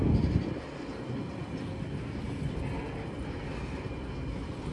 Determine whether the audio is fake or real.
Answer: real